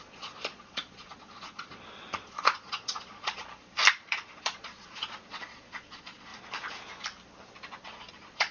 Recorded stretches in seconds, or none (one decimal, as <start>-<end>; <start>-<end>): 3.4-3.9; 6.3-8.1